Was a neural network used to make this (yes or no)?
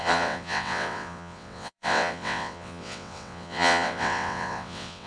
yes